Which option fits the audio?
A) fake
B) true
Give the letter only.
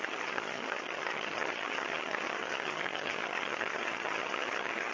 A